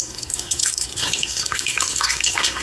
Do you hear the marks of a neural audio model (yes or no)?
yes